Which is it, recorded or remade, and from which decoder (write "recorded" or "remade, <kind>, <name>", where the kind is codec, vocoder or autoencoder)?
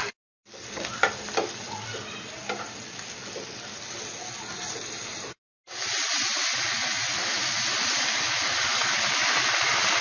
recorded